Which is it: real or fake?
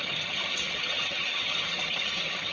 fake